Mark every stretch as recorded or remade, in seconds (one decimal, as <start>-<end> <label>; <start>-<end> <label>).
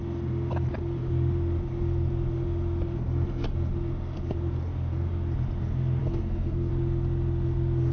0.0-6.0 recorded; 6.0-6.7 remade; 6.7-7.9 recorded